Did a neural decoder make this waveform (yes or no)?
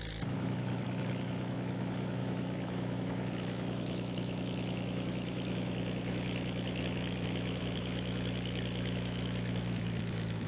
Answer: yes